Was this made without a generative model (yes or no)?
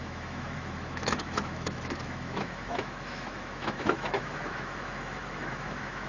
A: no